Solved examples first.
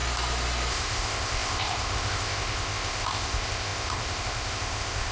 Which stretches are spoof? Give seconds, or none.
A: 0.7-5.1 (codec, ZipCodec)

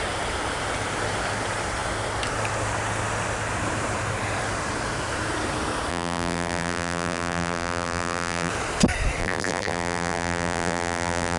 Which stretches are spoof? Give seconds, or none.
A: 5.9-8.5 (vocoder, BigVGAN v2); 9.2-11.4

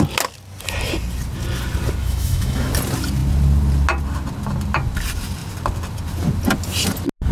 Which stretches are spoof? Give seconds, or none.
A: 2.0-2.7 (autoencoder, DAC-VAE)

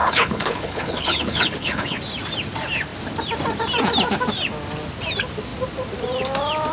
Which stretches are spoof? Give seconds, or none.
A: 0.0-2.0 (codec, HILCodec)